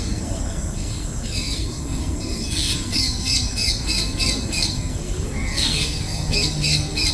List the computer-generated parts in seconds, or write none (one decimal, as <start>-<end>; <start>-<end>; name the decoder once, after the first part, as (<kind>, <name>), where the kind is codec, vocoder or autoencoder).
0.0-7.1 (codec, SNAC)